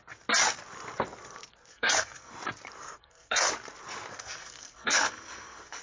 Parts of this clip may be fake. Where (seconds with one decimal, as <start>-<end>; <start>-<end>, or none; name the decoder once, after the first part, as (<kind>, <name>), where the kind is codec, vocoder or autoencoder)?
1.7-2.3 (codec, SNAC); 2.8-3.5; 4.1-5.8